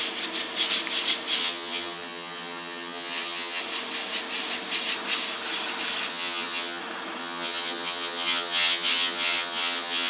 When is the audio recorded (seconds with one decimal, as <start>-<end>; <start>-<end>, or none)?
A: 0.0-1.4; 3.6-6.1; 6.8-7.2